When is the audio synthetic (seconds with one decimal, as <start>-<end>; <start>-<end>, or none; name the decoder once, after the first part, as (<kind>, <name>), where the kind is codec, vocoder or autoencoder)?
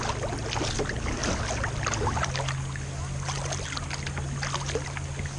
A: none